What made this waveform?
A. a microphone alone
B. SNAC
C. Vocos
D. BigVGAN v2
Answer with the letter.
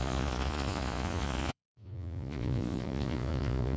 C